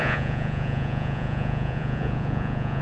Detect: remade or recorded remade